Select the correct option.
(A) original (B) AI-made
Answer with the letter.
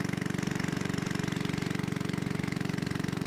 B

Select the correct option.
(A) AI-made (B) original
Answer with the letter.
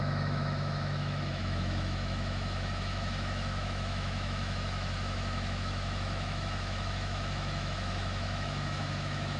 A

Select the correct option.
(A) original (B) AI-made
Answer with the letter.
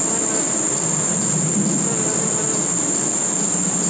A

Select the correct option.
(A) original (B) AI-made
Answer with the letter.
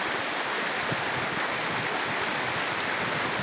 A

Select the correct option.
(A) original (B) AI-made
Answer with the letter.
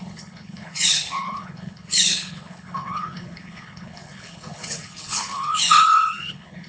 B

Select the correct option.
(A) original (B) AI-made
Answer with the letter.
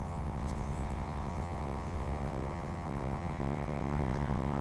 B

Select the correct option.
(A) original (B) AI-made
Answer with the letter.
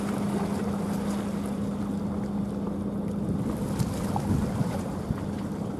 A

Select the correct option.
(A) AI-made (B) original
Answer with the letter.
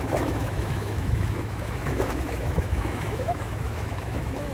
A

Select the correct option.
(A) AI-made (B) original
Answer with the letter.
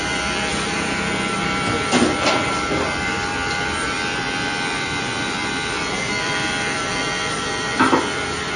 A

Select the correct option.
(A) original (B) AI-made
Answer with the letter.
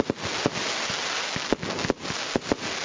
A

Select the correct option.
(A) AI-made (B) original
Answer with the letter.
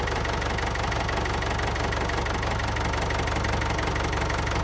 B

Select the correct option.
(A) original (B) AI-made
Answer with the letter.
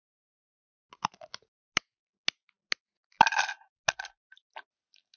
A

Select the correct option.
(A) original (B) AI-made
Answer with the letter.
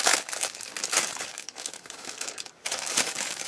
B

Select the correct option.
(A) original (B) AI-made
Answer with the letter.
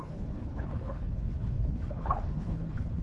B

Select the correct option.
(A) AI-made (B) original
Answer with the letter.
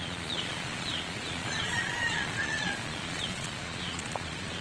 A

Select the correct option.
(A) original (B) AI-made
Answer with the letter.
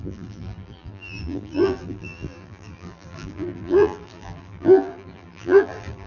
B